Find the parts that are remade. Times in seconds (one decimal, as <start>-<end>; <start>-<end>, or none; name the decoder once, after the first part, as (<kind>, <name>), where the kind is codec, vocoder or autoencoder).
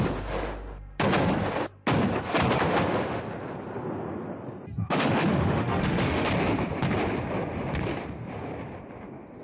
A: 4.8-6.3 (autoencoder, DAC-VAE)